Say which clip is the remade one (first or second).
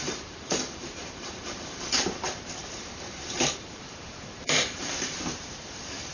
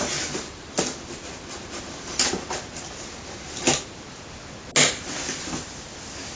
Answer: first